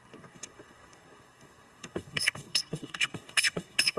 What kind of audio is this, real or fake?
fake